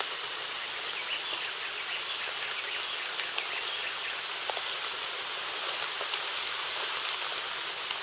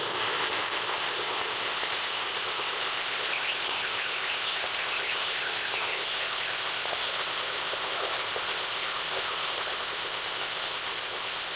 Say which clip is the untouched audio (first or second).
first